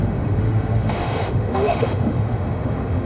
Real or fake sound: fake